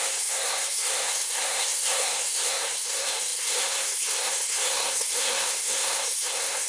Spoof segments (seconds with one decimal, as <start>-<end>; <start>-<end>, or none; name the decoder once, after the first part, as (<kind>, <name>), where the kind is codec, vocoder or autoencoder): 0.0-6.7 (codec, SNAC)